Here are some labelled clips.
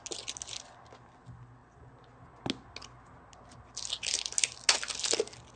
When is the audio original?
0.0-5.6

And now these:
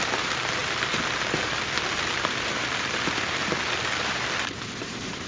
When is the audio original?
0.6-2.1; 3.4-4.0